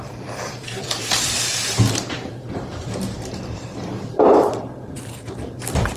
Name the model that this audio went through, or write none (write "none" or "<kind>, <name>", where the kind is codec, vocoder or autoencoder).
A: vocoder, BigVGAN v2